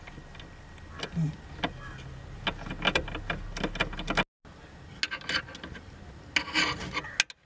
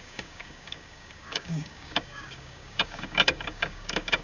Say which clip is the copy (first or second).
second